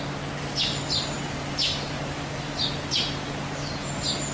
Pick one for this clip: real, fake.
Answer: real